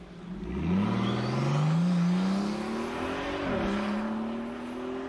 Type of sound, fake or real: real